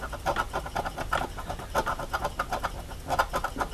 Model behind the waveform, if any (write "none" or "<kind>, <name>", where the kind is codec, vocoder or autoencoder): none